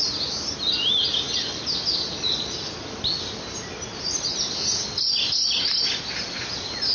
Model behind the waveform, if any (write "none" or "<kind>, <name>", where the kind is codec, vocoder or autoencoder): none